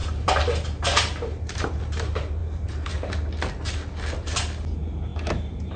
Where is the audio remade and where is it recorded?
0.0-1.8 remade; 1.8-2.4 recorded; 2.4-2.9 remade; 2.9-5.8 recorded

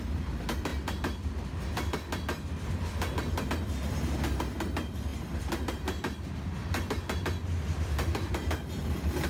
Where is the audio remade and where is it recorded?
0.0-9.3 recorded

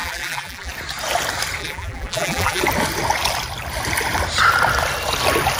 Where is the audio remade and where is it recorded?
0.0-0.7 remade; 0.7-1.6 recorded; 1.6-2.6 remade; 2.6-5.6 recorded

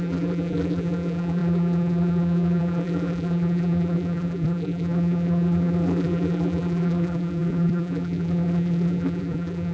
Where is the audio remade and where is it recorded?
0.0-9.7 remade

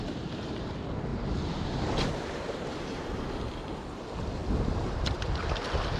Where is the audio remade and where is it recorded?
0.0-1.1 recorded; 1.1-3.4 remade; 3.4-6.0 recorded

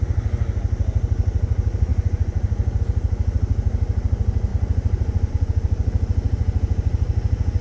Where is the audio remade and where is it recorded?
0.0-4.5 recorded; 4.5-5.3 remade; 5.3-7.6 recorded